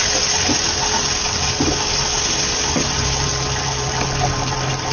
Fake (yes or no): no